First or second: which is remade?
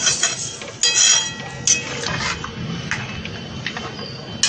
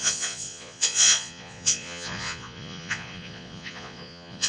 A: second